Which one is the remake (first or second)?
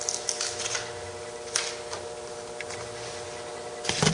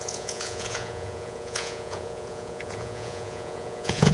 second